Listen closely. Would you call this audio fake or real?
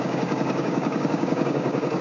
fake